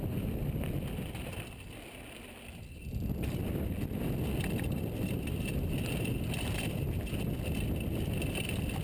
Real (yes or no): yes